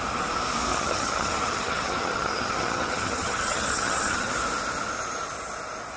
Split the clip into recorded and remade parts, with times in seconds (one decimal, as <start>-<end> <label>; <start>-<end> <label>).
0.0-0.7 recorded; 0.7-4.3 remade; 4.3-6.0 recorded